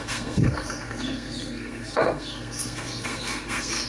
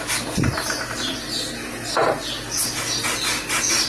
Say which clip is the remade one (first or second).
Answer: first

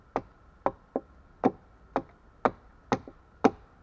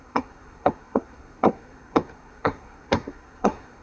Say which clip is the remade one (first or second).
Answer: second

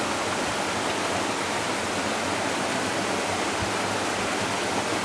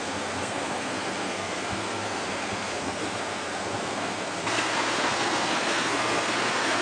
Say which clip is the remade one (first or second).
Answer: second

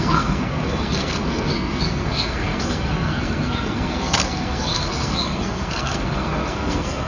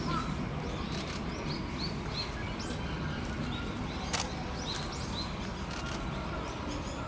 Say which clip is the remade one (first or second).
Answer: first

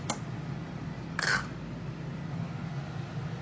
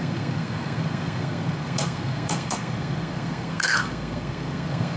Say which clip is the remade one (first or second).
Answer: second